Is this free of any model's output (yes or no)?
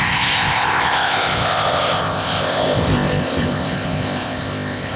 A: no